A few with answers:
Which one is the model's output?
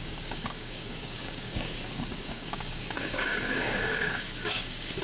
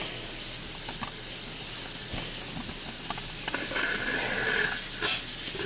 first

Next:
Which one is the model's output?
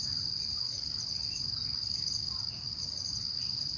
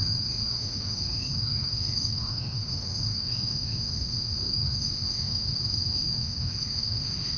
second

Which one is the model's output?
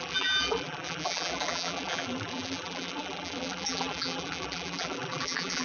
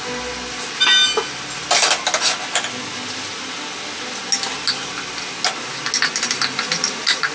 first